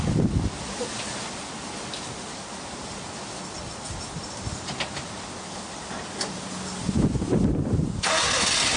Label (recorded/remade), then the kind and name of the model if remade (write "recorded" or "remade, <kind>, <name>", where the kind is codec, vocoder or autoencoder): recorded